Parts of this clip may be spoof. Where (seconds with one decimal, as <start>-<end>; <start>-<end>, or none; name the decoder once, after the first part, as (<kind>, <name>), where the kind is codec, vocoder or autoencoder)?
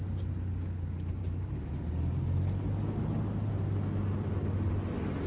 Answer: none